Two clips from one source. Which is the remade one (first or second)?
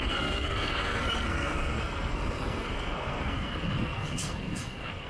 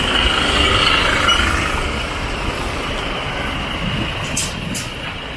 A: first